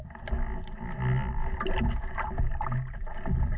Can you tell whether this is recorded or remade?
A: recorded